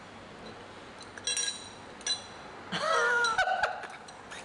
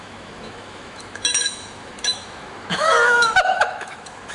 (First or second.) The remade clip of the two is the second